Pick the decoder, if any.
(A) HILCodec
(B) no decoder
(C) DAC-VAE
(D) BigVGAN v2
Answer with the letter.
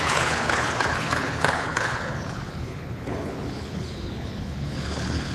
A